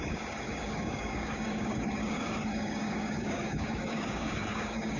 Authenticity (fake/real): fake